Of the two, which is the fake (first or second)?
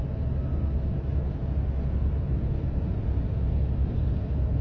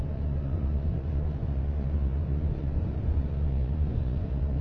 second